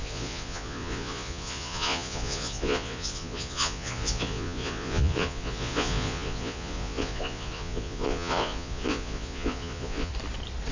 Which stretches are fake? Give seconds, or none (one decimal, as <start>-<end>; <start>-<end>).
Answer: 0.0-10.1